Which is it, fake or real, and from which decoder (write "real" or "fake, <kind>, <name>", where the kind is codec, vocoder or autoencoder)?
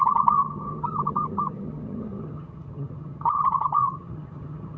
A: fake, vocoder, HiFi-GAN